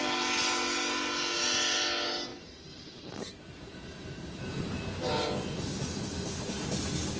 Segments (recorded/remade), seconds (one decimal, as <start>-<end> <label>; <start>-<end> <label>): 0.0-7.2 recorded